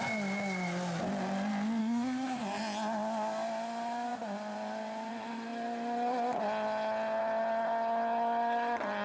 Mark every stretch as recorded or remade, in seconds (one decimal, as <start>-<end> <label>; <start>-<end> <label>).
0.0-1.8 recorded; 1.8-2.4 remade; 2.4-9.0 recorded